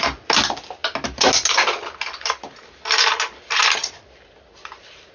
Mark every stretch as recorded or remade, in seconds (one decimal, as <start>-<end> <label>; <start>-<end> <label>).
0.0-5.1 recorded